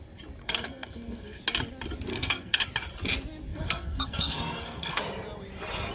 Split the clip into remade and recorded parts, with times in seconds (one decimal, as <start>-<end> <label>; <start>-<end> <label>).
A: 0.0-0.4 recorded; 0.4-1.4 remade; 1.4-2.1 recorded; 2.1-2.6 remade; 2.6-3.5 recorded; 3.5-5.0 remade; 5.0-5.9 recorded